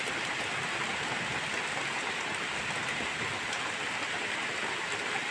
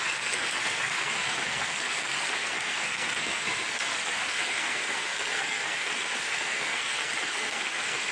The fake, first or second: second